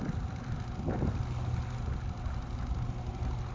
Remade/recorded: recorded